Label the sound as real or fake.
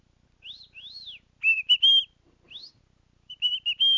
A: real